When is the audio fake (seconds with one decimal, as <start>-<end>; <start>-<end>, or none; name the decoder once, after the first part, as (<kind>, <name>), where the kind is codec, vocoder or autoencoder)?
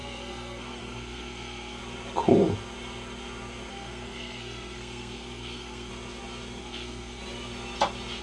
0.0-1.8 (codec, SNAC); 3.7-5.9; 6.6-7.2